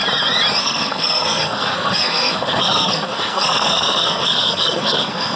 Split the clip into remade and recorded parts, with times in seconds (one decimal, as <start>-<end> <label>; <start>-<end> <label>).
0.0-0.6 recorded; 0.6-5.4 remade